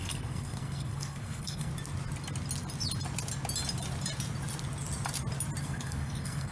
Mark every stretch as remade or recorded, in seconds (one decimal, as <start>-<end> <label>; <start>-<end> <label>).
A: 0.0-1.7 remade; 1.7-5.6 recorded; 5.6-6.5 remade